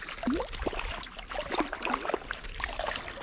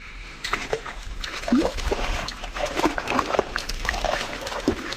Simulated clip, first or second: second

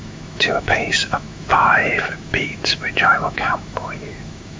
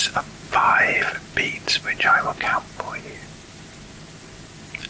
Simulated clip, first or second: first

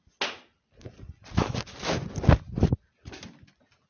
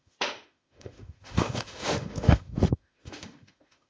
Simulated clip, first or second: second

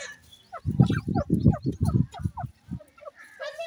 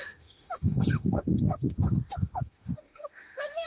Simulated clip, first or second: second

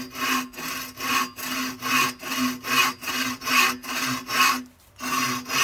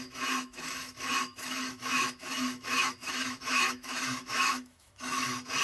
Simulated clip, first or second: second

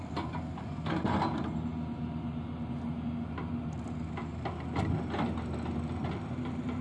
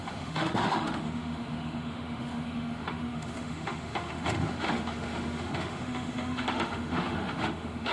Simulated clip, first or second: second